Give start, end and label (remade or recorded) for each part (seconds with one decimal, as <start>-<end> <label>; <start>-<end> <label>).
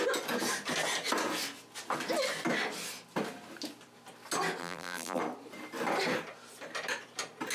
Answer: 0.0-4.6 recorded; 4.6-5.2 remade; 5.2-7.5 recorded